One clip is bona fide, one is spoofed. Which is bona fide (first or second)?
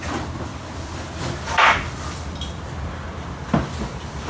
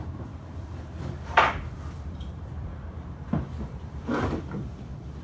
first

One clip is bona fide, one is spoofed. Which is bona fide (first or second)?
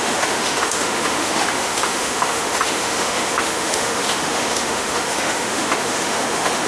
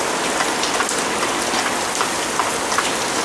second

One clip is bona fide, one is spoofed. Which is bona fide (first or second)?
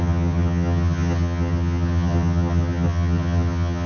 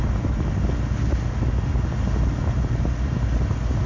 second